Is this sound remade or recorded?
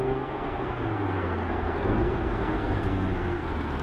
remade